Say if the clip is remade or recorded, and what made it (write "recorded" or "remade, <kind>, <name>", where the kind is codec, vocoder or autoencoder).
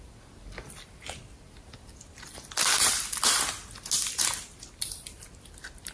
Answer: recorded